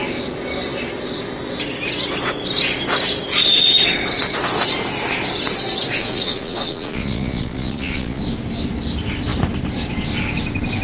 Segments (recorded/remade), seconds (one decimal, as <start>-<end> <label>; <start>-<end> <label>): 0.0-6.0 recorded; 6.0-8.2 remade; 8.2-10.8 recorded